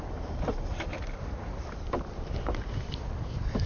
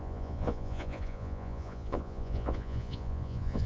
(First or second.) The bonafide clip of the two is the first